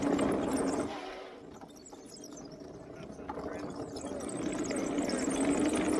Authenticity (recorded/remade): recorded